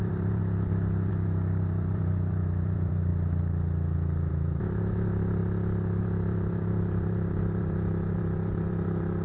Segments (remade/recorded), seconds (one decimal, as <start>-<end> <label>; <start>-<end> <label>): 0.0-0.4 remade; 0.4-1.1 recorded; 1.1-3.1 remade; 3.1-4.3 recorded; 4.3-5.4 remade; 5.4-6.0 recorded; 6.0-9.2 remade